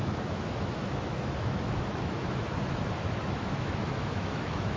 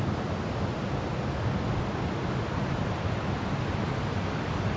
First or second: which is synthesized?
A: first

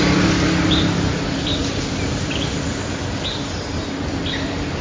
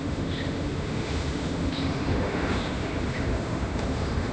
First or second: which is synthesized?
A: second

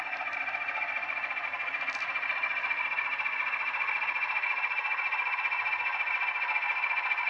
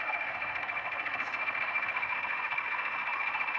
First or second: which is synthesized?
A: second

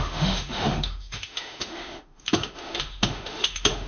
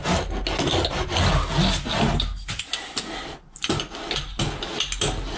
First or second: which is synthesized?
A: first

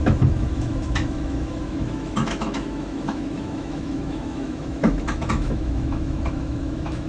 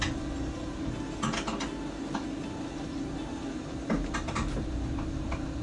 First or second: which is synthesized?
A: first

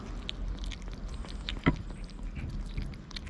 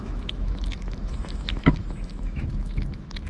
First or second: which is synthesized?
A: second